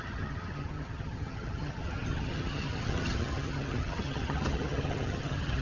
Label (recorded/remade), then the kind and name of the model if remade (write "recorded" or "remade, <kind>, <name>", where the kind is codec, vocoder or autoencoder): remade, vocoder, HiFi-GAN